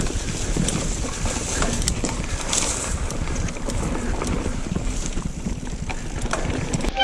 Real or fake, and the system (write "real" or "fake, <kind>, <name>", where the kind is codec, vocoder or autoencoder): real